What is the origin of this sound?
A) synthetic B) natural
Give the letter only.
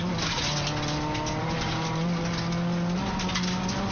B